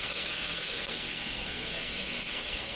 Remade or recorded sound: remade